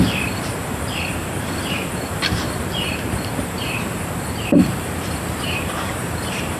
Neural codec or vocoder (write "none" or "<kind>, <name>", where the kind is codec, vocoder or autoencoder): vocoder, BigVGAN v2